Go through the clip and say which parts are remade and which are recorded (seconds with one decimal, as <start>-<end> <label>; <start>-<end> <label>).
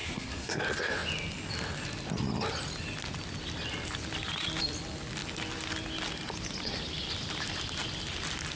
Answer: 0.0-0.6 remade; 0.6-8.6 recorded